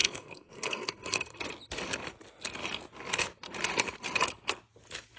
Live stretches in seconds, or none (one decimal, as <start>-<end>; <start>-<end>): 1.4-5.2